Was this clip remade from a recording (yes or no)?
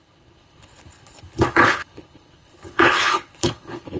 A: yes